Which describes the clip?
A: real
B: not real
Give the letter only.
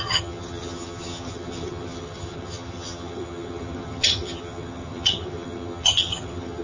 B